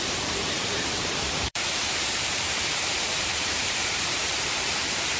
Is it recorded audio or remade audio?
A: remade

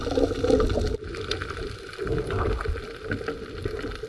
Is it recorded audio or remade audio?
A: recorded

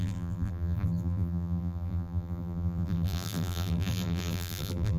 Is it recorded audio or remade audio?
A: remade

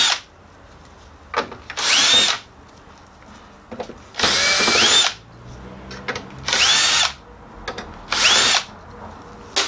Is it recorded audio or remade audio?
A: recorded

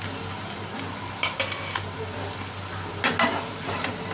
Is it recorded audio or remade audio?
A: recorded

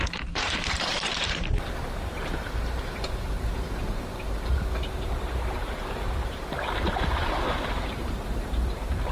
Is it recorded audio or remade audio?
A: remade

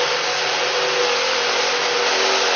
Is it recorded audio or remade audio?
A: recorded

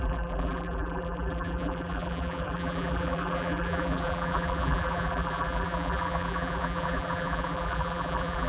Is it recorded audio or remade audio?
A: remade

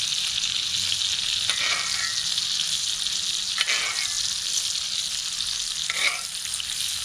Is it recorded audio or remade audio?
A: recorded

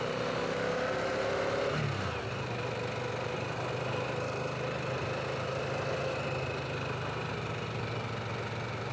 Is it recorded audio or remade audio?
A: recorded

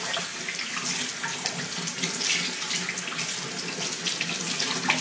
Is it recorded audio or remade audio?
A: recorded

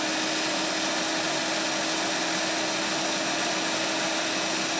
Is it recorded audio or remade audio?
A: recorded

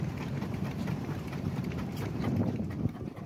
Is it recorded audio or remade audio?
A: remade